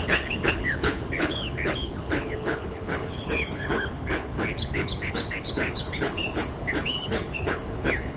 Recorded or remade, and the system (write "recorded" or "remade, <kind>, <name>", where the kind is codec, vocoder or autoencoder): remade, codec, HILCodec